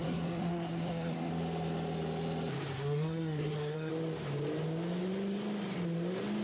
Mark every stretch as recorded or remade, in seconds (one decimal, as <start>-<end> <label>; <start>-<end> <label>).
0.0-1.3 remade; 1.3-2.7 recorded; 2.7-3.9 remade; 3.9-6.4 recorded